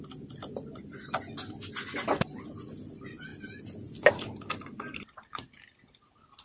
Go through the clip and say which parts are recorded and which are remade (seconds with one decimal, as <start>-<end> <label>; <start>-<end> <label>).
0.0-6.4 recorded